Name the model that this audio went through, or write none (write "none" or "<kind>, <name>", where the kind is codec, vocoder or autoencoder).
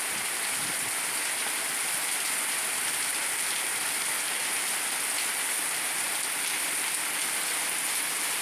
none